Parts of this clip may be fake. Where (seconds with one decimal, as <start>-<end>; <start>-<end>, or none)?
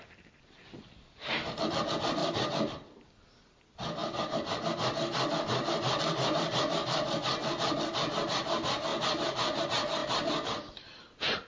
2.2-3.1; 8.9-9.6